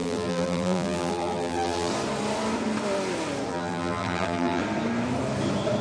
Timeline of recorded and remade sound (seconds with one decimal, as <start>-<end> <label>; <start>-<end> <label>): 0.0-1.9 remade; 1.9-3.5 recorded; 3.5-4.6 remade; 4.6-5.8 recorded